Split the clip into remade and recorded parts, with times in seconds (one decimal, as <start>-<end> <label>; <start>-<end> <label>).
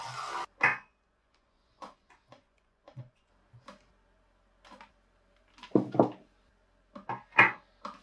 0.0-0.7 recorded; 0.7-3.3 remade; 3.3-8.0 recorded